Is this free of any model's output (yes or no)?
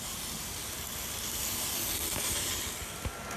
yes